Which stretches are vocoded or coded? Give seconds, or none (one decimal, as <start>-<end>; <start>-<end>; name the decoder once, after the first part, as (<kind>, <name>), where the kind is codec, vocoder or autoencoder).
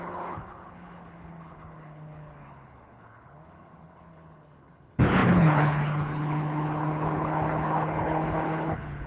0.0-9.1 (codec, HILCodec)